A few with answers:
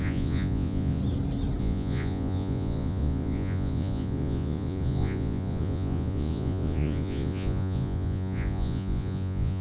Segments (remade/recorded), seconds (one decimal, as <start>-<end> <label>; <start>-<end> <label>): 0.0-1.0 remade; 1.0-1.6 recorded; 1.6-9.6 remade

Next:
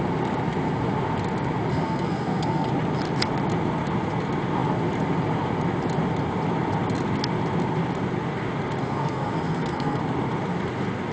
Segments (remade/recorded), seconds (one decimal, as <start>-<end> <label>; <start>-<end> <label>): 0.0-1.7 recorded; 1.7-2.7 remade; 2.7-8.8 recorded; 8.8-10.0 remade; 10.0-11.1 recorded

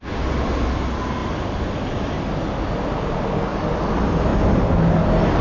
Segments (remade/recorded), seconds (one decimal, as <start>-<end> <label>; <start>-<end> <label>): 0.0-5.4 recorded

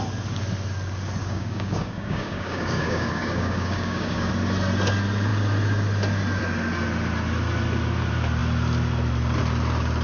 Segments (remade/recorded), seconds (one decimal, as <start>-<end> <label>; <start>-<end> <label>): 0.0-1.2 recorded; 1.2-4.3 remade; 4.3-10.0 recorded

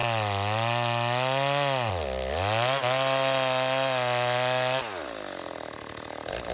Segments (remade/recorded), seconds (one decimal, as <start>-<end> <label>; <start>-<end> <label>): 0.0-6.5 recorded

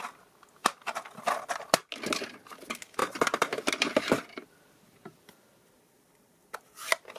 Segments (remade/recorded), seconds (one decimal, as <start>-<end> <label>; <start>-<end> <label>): 0.0-0.6 recorded; 0.6-1.9 remade; 1.9-3.0 recorded; 3.0-7.2 remade

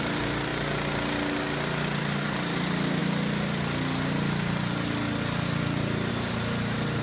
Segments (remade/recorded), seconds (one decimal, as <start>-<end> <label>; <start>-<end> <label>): 0.0-0.5 remade; 0.5-2.0 recorded; 2.0-3.0 remade; 3.0-6.1 recorded; 6.1-7.0 remade

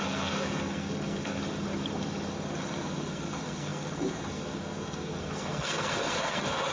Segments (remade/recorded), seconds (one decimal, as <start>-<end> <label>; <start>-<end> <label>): 0.0-1.4 remade; 1.4-2.6 recorded; 2.6-6.7 remade